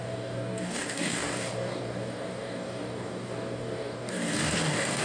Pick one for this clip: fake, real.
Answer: fake